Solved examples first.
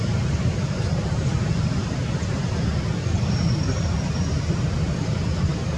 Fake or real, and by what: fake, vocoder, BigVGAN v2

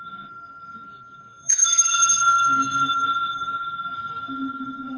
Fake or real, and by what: fake, codec, SNAC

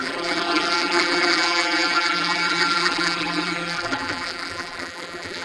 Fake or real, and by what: fake, vocoder, BigVGAN v2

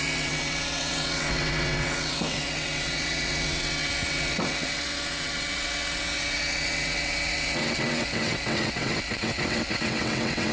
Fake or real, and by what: fake, vocoder, WaveNeXt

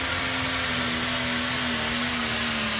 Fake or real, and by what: real